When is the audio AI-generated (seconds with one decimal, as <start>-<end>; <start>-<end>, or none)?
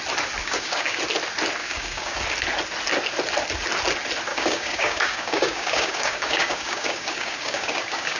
0.4-1.0; 1.6-2.2; 4.3-8.2